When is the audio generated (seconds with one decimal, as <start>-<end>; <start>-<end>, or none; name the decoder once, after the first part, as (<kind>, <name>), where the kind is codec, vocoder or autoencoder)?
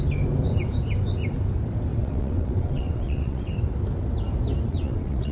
1.9-3.5 (vocoder, WaveNeXt); 4.7-5.3